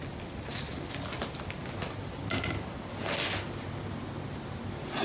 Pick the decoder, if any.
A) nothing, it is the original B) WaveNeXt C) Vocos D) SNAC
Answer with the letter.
A